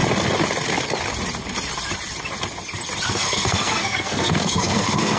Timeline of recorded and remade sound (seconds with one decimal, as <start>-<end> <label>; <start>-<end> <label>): 0.0-3.1 recorded; 3.1-5.2 remade